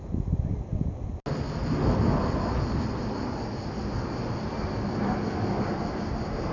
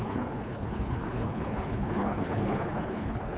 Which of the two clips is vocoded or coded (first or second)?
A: second